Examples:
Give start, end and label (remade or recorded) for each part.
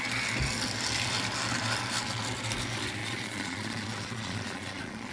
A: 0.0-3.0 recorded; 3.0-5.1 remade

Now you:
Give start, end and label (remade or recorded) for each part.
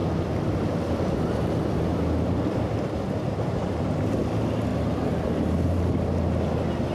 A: 0.0-4.1 remade; 4.1-4.7 recorded; 4.7-5.2 remade; 5.2-6.9 recorded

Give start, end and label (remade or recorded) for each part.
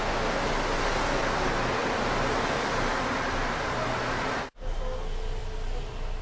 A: 0.0-6.2 recorded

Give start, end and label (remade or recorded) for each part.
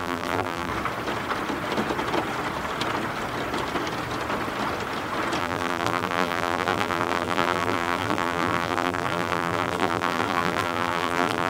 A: 0.0-0.7 remade; 0.7-5.4 recorded; 5.4-11.5 remade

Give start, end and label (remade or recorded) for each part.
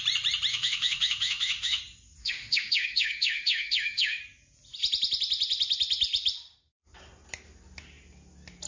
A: 0.0-0.5 recorded; 0.5-1.8 remade; 1.8-2.2 recorded; 2.2-4.2 remade; 4.2-8.7 recorded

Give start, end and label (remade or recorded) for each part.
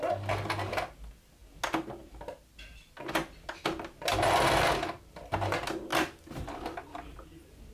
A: 0.0-5.9 recorded; 5.9-7.7 remade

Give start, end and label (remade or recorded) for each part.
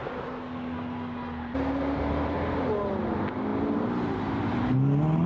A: 0.0-5.3 recorded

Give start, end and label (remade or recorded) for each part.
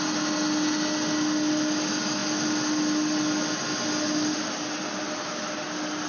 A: 0.0-6.1 recorded